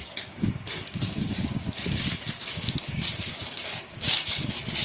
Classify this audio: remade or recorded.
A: remade